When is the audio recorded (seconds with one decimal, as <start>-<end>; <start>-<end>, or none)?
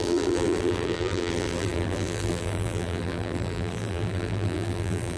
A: none